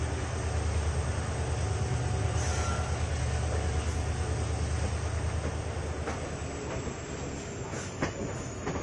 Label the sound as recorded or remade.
recorded